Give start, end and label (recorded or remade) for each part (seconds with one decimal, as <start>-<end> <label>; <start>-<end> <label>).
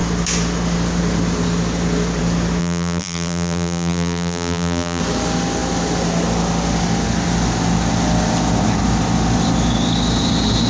0.0-2.6 recorded; 2.6-5.0 remade; 5.0-10.7 recorded